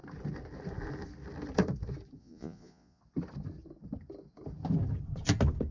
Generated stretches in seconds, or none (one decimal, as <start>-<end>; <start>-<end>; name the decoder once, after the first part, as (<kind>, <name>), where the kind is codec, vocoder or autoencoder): 2.2-3.0 (vocoder, Vocos)